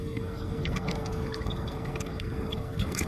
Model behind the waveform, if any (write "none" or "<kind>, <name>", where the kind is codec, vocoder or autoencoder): codec, SNAC